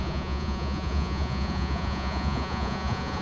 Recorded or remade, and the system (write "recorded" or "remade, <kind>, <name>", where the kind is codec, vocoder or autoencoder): remade, vocoder, Vocos